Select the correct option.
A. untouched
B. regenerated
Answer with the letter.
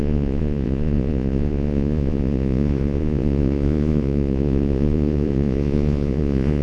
B